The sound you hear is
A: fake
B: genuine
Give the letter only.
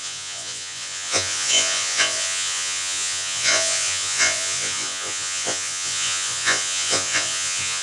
A